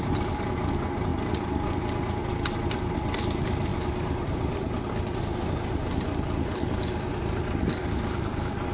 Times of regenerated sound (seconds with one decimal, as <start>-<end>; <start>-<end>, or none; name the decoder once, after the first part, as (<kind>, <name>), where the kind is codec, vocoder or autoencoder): none